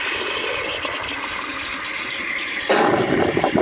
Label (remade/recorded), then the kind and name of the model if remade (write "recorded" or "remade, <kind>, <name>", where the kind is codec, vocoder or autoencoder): recorded